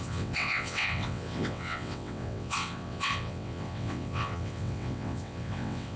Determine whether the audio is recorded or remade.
remade